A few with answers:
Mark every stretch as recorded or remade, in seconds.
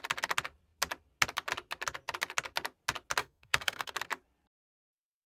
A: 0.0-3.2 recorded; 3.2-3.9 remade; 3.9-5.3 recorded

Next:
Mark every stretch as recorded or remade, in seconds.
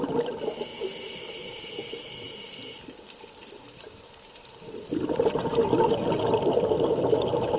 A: 0.0-0.7 recorded; 0.7-5.3 remade; 5.3-7.6 recorded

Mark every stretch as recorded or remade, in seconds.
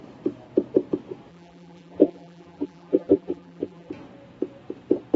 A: 0.0-1.3 recorded; 1.3-3.9 remade; 3.9-5.2 recorded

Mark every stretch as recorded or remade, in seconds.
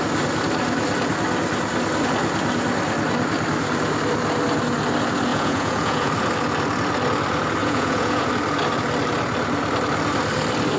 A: 0.0-5.3 recorded; 5.3-6.1 remade; 6.1-7.6 recorded; 7.6-8.3 remade; 8.3-10.8 recorded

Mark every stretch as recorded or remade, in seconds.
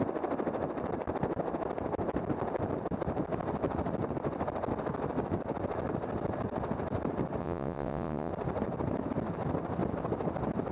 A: 0.0-7.4 recorded; 7.4-8.3 remade; 8.3-10.7 recorded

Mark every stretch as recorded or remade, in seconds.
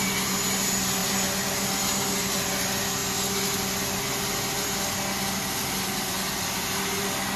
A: 0.0-7.4 recorded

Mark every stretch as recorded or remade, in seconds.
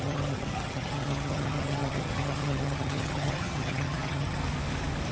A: 0.0-4.4 remade; 4.4-5.1 recorded